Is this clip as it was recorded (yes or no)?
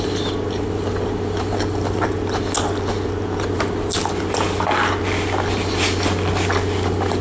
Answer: yes